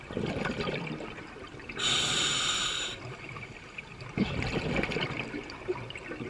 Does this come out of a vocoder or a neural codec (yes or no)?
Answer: yes